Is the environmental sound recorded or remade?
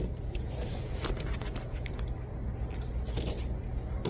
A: recorded